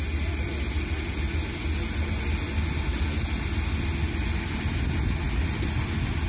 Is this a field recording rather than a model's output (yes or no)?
yes